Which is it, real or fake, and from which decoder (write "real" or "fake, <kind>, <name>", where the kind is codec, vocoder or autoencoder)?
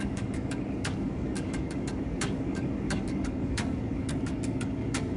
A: fake, codec, DAC